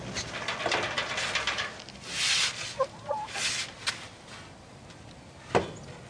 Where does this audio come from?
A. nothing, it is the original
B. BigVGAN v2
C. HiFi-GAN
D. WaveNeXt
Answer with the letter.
A